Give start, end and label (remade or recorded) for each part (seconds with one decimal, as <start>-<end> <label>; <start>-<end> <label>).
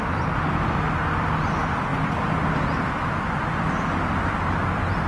0.0-5.1 recorded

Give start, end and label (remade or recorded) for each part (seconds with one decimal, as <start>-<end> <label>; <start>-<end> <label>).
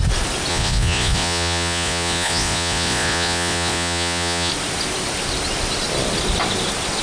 0.0-0.5 recorded; 0.5-4.5 remade; 4.5-7.0 recorded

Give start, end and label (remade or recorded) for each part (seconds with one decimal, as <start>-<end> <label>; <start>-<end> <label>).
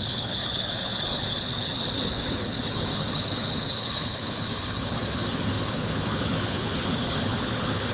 0.0-7.9 remade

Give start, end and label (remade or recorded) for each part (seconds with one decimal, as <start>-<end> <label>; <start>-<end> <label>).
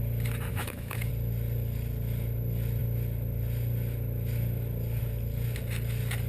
0.0-0.5 recorded; 0.5-1.1 remade; 1.1-6.3 recorded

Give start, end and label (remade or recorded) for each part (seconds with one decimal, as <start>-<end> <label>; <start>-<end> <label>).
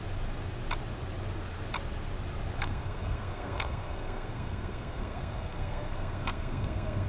0.0-2.6 recorded; 2.6-7.1 remade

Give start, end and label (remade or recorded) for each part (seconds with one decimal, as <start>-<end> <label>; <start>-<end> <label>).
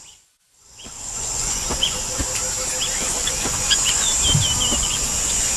0.0-2.2 remade; 2.2-2.9 recorded; 2.9-4.1 remade; 4.1-4.8 recorded; 4.8-5.6 remade